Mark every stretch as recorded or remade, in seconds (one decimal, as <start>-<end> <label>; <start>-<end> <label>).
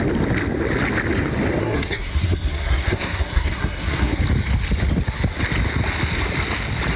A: 0.0-1.6 recorded; 1.6-4.2 remade; 4.2-7.0 recorded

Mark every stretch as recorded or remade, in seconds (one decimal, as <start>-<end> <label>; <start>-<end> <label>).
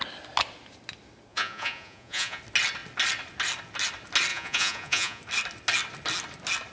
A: 0.0-1.3 recorded; 1.3-2.4 remade; 2.4-4.3 recorded; 4.3-5.2 remade; 5.2-6.7 recorded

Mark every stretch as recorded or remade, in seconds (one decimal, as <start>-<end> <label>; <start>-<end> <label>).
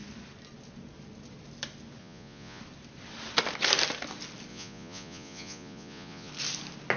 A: 0.0-2.0 recorded; 2.0-2.6 remade; 2.6-4.5 recorded; 4.5-6.3 remade; 6.3-7.0 recorded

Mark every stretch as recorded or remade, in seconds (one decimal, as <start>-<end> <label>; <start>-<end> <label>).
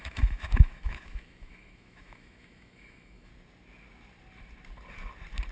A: 0.0-3.3 remade; 3.3-5.5 recorded